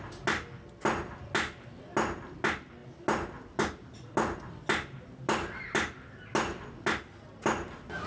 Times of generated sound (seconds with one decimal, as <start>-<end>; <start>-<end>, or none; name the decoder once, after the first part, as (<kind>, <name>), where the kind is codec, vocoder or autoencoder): none